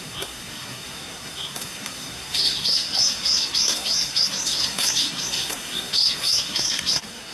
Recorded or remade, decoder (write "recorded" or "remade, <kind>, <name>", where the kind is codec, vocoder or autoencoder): remade, codec, SNAC